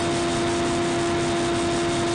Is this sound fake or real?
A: real